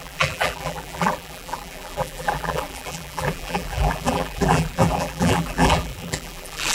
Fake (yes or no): yes